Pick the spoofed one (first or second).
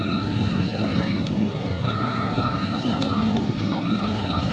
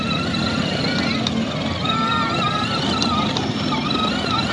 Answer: first